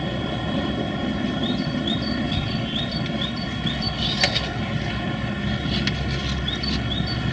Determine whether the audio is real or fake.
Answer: real